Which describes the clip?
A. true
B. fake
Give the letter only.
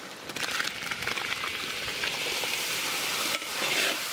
B